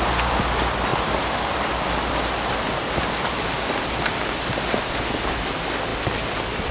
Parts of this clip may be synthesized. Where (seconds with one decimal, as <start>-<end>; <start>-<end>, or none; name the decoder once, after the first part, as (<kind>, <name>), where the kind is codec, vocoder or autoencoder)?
0.9-2.5 (vocoder, BigVGAN v2); 5.9-6.7